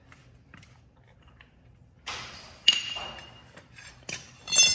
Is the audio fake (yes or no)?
yes